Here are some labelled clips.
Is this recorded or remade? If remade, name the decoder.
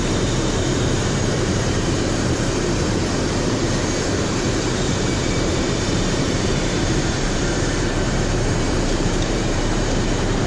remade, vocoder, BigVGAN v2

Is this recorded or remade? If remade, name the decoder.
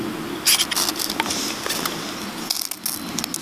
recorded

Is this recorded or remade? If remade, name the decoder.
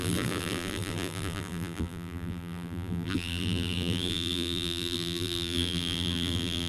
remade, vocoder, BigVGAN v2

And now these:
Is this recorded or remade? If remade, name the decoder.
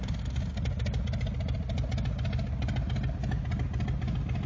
recorded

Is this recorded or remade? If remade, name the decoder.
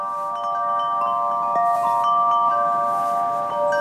recorded